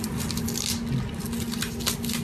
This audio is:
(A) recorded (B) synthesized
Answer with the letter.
A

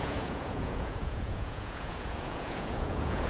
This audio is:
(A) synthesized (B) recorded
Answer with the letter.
A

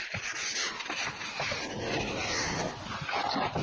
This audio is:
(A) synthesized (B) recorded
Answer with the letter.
B